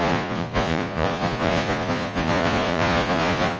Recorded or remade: remade